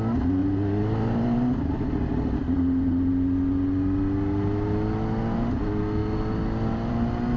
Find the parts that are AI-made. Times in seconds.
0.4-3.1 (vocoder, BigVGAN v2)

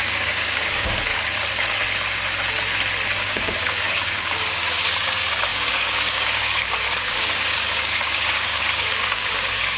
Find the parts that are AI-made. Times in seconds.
0.0-1.1 (codec, DAC); 3.1-9.8